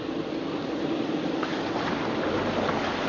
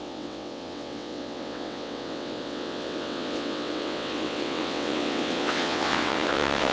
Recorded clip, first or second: first